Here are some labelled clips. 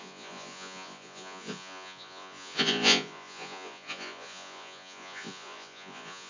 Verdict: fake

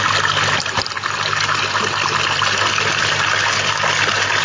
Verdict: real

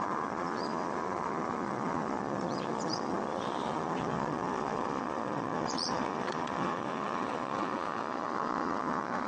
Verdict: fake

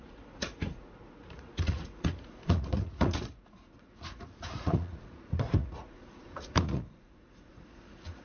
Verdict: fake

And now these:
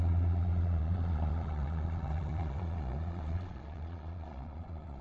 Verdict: fake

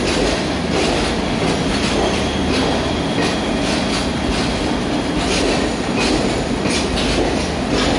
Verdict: real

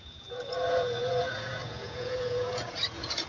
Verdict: fake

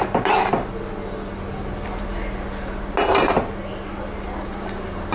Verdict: real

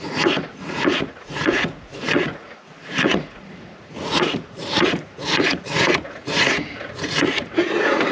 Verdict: fake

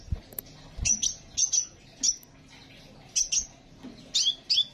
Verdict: real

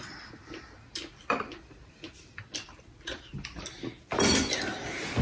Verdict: real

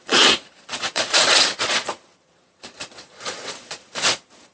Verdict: fake